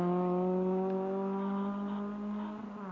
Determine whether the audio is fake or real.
real